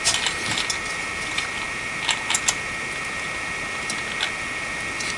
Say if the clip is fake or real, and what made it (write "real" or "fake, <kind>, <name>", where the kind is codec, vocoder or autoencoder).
real